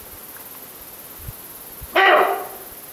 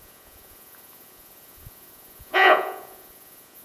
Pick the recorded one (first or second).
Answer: first